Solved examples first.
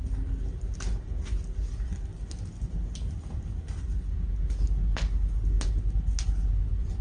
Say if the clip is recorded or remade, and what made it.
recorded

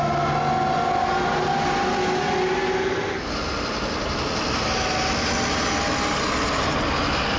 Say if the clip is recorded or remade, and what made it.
recorded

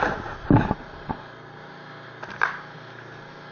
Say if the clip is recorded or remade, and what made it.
recorded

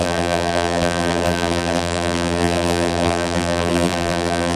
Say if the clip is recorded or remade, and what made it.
remade, vocoder, BigVGAN v2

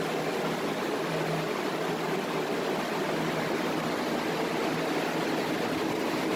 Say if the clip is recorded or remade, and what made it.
recorded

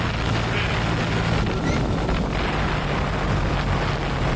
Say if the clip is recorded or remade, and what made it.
recorded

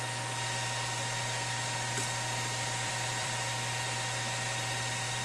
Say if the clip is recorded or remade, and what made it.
remade, vocoder, BigVGAN v2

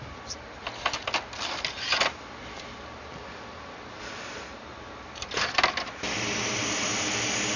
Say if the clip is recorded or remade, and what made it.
recorded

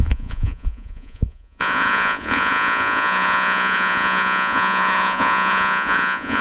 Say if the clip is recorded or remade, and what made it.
remade, vocoder, Vocos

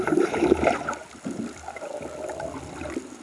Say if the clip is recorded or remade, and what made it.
recorded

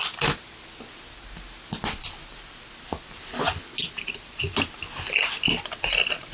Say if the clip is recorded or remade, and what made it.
recorded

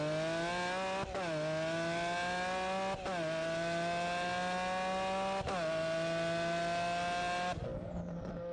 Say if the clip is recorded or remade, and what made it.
recorded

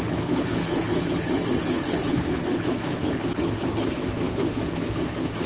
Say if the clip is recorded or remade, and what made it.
remade, codec, HILCodec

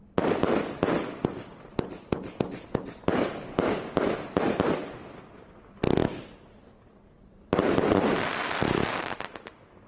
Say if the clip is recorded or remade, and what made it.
recorded